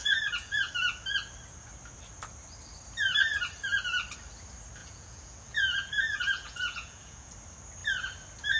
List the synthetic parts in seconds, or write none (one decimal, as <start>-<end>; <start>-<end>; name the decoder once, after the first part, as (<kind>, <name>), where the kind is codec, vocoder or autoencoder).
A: 0.0-0.7 (vocoder, Vocos); 4.8-7.3